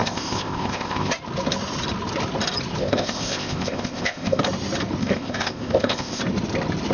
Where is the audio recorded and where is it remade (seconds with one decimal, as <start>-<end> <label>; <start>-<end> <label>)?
0.0-1.1 remade; 1.1-2.8 recorded; 2.8-4.4 remade; 4.4-5.0 recorded; 5.0-6.2 remade; 6.2-6.9 recorded